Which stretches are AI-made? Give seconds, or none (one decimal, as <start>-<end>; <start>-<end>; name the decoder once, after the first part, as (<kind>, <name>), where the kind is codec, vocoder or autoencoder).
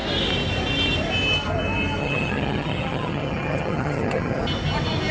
2.0-4.4 (vocoder, HiFi-GAN)